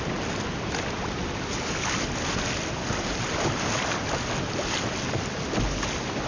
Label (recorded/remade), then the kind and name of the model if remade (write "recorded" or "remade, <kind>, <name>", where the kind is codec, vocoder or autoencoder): recorded